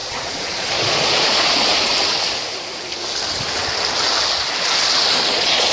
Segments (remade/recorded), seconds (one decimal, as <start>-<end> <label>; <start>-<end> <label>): 0.0-1.9 remade; 1.9-5.3 recorded; 5.3-5.7 remade